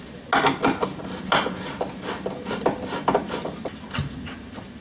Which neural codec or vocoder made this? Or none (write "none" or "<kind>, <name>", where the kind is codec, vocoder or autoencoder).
none